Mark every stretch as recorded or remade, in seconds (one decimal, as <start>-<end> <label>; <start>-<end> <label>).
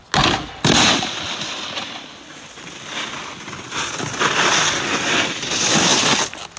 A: 0.0-6.6 recorded